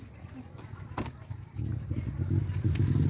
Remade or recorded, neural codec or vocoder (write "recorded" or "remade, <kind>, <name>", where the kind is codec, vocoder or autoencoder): recorded